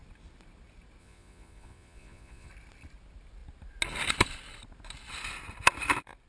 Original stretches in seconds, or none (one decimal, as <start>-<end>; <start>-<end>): 0.0-1.0; 2.5-6.3